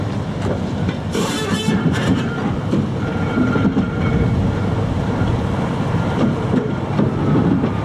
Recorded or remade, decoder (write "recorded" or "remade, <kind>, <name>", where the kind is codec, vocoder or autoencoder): remade, vocoder, BigVGAN v2